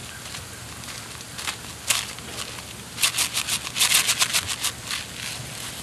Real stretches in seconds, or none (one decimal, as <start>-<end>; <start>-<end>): 0.0-5.8